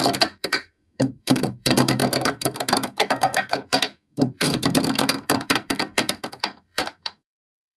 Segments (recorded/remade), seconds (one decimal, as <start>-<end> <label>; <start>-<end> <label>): 0.0-7.8 remade